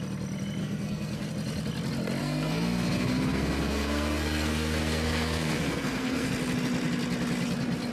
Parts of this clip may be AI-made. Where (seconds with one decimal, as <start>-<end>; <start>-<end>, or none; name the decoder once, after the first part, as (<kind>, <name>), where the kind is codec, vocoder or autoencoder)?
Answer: 0.6-1.3 (codec, SNAC); 2.2-6.3